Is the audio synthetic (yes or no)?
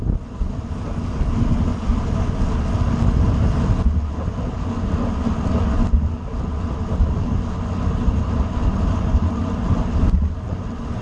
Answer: no